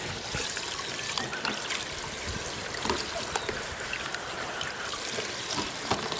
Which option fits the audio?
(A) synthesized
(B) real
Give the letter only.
B